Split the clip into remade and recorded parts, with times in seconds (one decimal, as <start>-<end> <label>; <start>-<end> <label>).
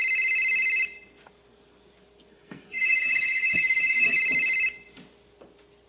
0.0-2.3 recorded; 2.3-4.2 remade; 4.2-5.9 recorded